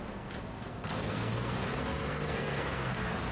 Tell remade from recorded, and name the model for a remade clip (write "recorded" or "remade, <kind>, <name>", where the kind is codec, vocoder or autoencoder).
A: remade, codec, SNAC